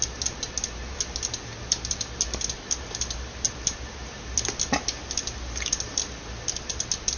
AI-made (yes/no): no